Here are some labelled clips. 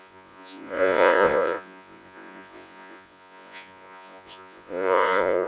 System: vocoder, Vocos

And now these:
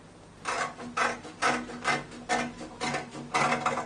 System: none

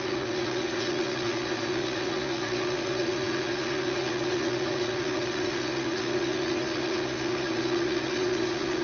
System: vocoder, Vocos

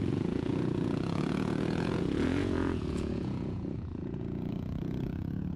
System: vocoder, Vocos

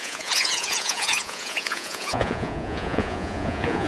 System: vocoder, Vocos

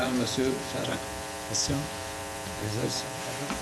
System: vocoder, Vocos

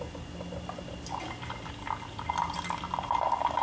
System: none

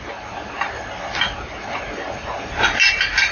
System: none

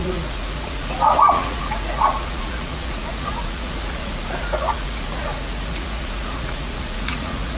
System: vocoder, Vocos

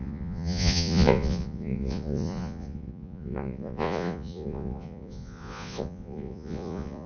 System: vocoder, Vocos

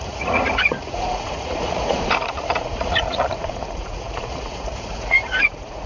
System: vocoder, Vocos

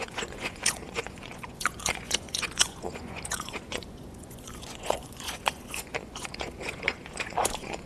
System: vocoder, Vocos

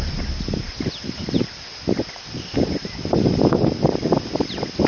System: none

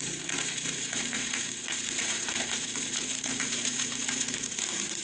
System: vocoder, Vocos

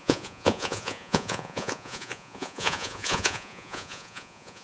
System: vocoder, Vocos